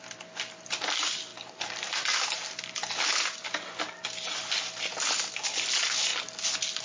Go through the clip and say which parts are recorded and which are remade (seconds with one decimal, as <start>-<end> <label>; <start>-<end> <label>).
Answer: 0.0-6.8 recorded